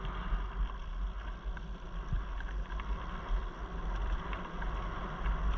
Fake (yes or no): no